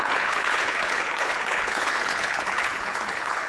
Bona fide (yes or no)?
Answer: no